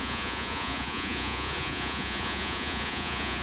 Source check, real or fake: fake